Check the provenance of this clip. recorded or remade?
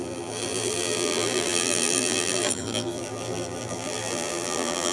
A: remade